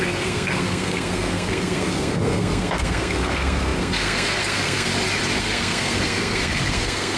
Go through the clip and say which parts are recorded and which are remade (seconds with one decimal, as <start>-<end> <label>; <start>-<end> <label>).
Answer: 0.0-4.9 remade; 4.9-5.4 recorded; 5.4-7.2 remade

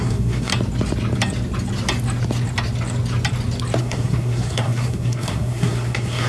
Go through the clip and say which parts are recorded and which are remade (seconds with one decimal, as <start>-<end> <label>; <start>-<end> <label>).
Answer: 0.0-0.5 remade; 0.5-3.8 recorded; 3.8-6.3 remade